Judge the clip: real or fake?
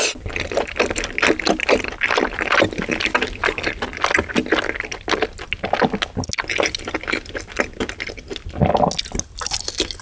real